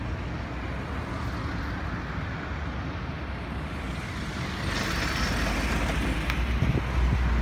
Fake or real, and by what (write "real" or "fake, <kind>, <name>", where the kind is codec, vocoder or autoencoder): real